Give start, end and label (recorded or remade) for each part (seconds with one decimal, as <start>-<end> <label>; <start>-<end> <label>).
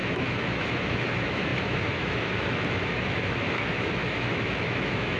0.0-5.2 remade